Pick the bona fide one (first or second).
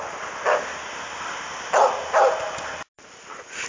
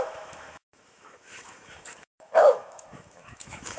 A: first